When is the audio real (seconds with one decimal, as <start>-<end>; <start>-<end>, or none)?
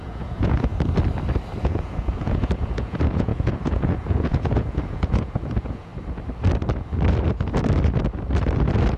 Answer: 0.7-1.6; 5.9-9.0